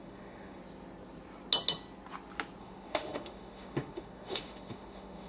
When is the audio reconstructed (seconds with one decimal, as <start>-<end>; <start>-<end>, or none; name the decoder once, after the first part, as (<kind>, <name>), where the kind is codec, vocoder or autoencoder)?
0.0-0.6 (autoencoder, DAC-VAE); 2.6-5.3